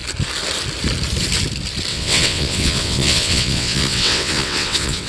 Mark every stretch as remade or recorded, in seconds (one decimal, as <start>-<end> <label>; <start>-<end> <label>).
0.0-1.9 recorded; 1.9-5.1 remade